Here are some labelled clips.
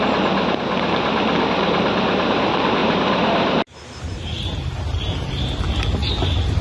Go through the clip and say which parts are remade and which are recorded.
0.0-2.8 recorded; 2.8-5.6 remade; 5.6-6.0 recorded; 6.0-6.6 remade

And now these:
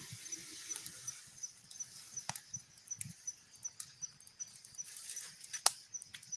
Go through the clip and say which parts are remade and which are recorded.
0.0-0.4 recorded; 0.4-1.2 remade; 1.2-3.9 recorded; 3.9-5.5 remade; 5.5-6.4 recorded

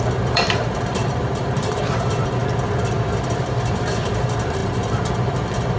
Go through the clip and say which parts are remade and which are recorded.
0.0-2.4 remade; 2.4-3.4 recorded; 3.4-5.8 remade

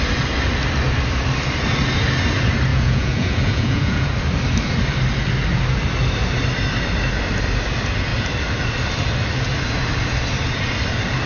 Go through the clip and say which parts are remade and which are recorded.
0.0-2.7 recorded; 2.7-4.1 remade; 4.1-11.3 recorded